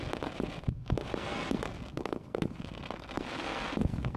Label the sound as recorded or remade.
remade